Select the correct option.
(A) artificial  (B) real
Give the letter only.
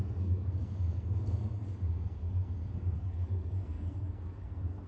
A